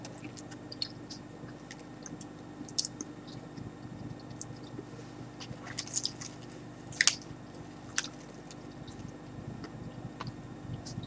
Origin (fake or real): real